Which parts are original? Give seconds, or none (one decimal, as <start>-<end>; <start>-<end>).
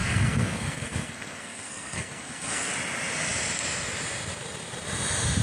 2.7-5.4